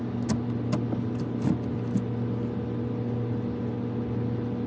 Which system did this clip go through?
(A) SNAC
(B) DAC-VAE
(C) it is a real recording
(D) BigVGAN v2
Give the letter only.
C